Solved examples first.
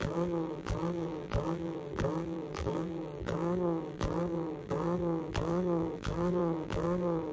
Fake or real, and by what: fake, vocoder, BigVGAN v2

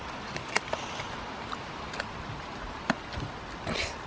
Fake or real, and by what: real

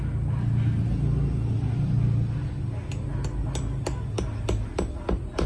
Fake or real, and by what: real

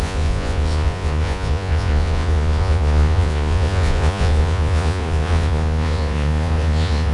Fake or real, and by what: fake, vocoder, Vocos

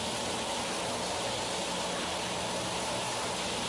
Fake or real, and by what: real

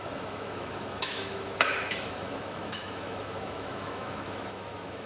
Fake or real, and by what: fake, autoencoder, DAC-VAE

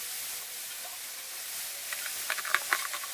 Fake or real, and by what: real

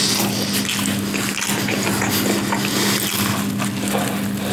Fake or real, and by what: real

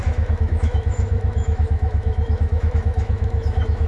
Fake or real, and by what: fake, autoencoder, DAC-VAE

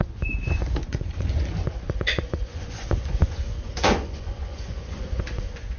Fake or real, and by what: fake, vocoder, Vocos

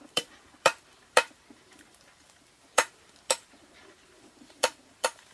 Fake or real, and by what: fake, vocoder, BigVGAN v2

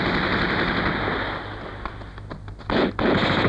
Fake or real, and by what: real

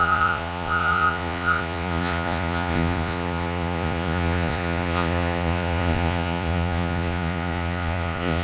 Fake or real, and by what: fake, vocoder, Vocos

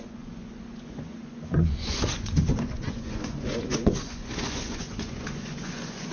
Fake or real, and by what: fake, vocoder, Vocos